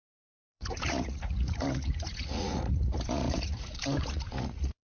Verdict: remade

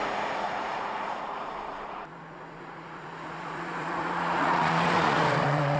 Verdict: remade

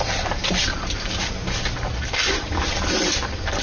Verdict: recorded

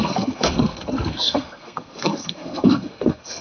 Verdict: remade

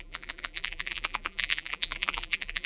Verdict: remade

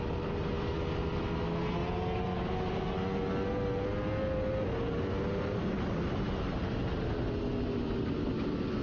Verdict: recorded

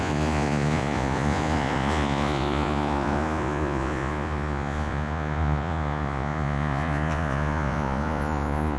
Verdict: remade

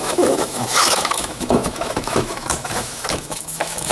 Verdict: remade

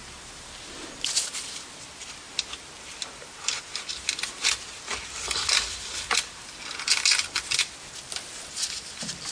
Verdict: recorded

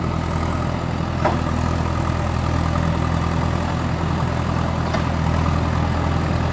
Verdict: recorded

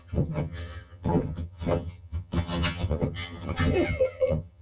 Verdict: remade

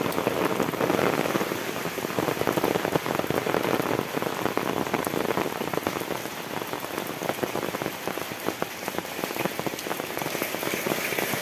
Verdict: recorded